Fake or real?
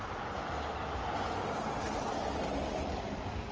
real